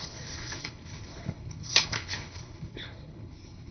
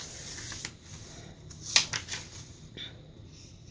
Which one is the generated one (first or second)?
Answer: first